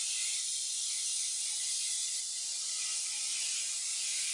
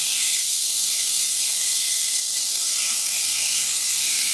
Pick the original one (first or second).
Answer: first